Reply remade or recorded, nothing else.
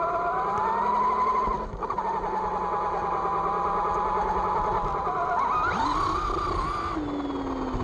recorded